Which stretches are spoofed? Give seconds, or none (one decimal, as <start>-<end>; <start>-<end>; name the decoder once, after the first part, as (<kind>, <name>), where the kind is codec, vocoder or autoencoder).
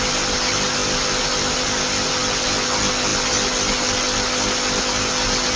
none